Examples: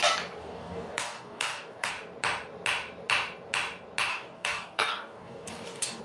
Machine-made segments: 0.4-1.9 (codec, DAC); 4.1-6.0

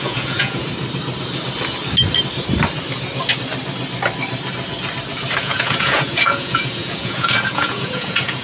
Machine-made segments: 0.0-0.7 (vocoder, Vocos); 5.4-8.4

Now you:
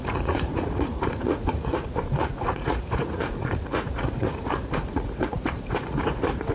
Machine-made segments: 0.0-6.5 (vocoder, Vocos)